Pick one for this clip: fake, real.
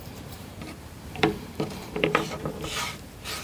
fake